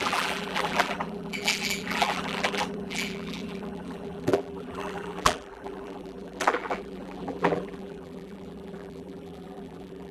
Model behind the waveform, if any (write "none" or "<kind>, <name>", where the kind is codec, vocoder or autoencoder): vocoder, BigVGAN v2